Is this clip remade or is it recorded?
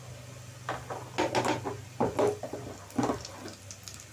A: recorded